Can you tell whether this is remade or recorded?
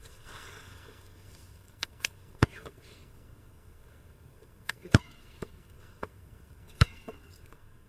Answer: remade